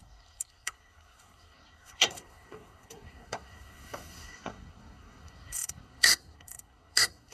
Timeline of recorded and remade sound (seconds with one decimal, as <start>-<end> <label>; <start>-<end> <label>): 0.0-7.3 remade

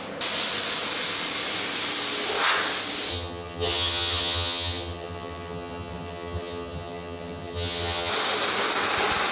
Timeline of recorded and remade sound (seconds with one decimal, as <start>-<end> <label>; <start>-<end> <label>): 0.0-3.1 recorded; 3.1-8.1 remade; 8.1-9.3 recorded

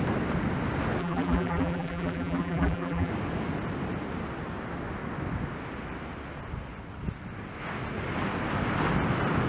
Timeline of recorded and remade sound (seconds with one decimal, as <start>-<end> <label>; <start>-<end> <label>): 0.0-1.0 recorded; 1.0-3.1 remade; 3.1-9.5 recorded

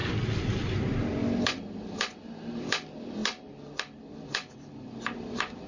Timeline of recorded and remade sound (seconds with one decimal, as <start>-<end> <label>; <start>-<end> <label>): 0.0-5.7 recorded

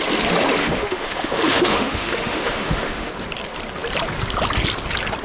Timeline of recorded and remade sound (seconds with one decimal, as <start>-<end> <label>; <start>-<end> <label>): 0.0-0.6 recorded; 0.6-3.1 remade; 3.1-5.2 recorded

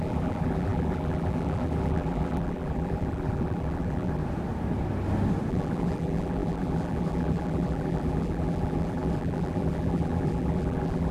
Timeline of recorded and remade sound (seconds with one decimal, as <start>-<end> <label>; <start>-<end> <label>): 0.0-4.2 remade; 4.2-5.5 recorded; 5.5-11.1 remade

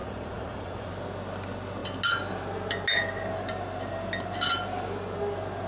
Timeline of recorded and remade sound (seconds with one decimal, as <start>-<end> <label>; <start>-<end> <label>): 0.0-0.9 remade; 0.9-5.7 recorded

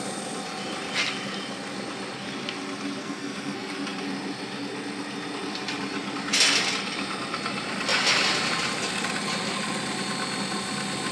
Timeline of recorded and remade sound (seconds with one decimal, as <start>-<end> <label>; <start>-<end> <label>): 0.0-3.0 recorded; 3.0-3.7 remade; 3.7-11.1 recorded